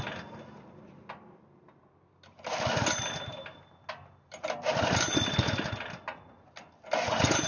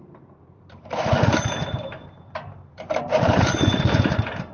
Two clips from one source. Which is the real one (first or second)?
first